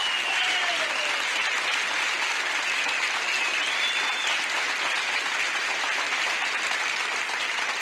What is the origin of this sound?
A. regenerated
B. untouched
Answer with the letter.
B